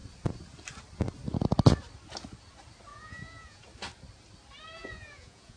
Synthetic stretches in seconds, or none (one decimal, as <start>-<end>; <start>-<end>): 2.9-3.6; 4.8-5.6